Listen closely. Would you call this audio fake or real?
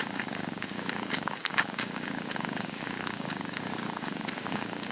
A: fake